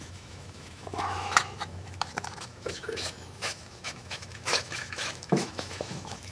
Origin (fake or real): fake